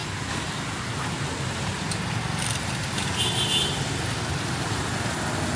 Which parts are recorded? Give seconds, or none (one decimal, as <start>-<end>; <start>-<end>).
0.0-5.6